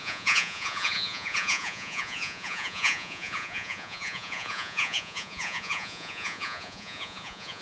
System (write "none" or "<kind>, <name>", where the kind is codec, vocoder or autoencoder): vocoder, Vocos